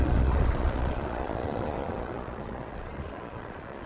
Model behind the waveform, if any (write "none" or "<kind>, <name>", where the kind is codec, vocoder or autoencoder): vocoder, Vocos